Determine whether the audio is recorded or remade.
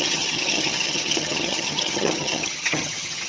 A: remade